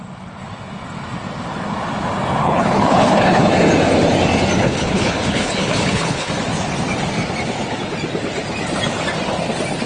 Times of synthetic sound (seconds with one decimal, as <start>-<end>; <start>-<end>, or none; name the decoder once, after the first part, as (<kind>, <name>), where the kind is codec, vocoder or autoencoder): 2.4-3.5 (codec, HILCodec); 4.6-6.3